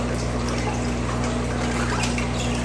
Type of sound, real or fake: real